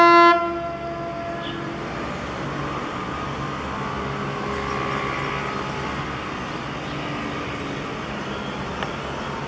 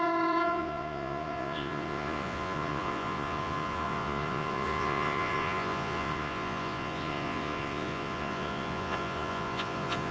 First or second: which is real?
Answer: first